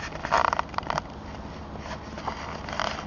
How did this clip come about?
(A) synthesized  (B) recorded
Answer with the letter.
B